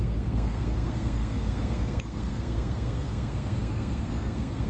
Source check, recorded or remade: remade